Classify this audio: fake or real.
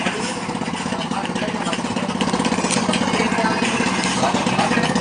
real